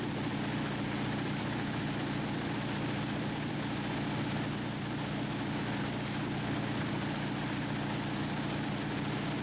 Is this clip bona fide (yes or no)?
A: yes